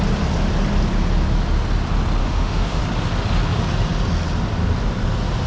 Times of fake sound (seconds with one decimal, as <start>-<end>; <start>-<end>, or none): 2.2-2.8